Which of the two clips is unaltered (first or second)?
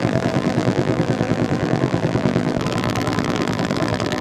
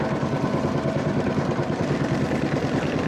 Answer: second